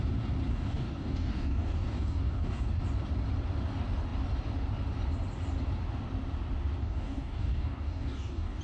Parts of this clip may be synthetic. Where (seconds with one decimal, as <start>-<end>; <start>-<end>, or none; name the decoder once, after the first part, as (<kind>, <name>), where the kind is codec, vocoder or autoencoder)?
0.5-2.8 (codec, DAC); 6.8-8.6